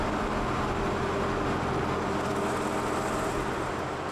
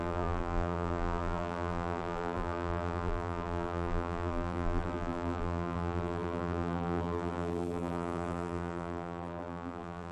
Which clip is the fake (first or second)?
second